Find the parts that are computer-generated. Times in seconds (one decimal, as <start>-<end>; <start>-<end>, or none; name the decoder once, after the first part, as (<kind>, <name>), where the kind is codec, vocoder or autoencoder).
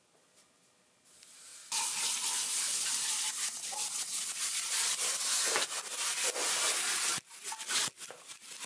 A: none